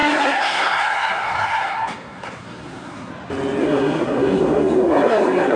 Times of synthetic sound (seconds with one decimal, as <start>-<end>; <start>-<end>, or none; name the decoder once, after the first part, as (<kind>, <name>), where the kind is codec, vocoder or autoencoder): 0.0-3.1 (codec, SNAC); 3.6-5.6